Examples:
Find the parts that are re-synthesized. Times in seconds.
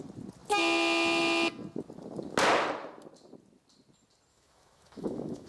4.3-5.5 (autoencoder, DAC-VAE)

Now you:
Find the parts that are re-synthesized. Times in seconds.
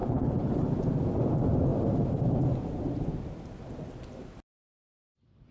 0.0-0.6 (codec, HILCodec)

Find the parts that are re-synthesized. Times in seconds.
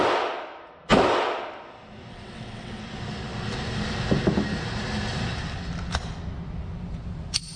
2.1-2.8 (vocoder, WaveNeXt)